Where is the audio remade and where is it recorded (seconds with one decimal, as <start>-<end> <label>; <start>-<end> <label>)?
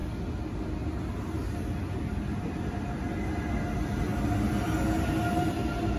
0.0-6.0 recorded